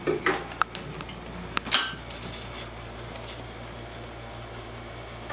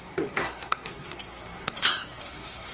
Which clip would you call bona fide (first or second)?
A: first